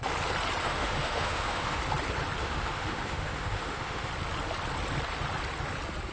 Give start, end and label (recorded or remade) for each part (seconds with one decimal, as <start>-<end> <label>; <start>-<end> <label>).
0.0-0.6 recorded; 0.6-1.8 remade; 1.8-2.4 recorded; 2.4-4.1 remade; 4.1-6.1 recorded